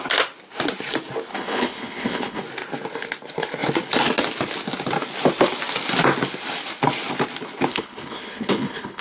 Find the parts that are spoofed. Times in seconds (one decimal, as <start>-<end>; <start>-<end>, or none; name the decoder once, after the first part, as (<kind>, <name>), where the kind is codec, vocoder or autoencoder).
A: 1.3-2.4 (codec, HILCodec); 7.7-9.0